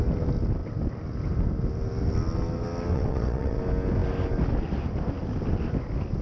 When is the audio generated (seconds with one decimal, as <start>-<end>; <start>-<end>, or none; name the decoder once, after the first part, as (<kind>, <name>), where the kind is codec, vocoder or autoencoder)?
2.9-3.6 (vocoder, WaveNeXt)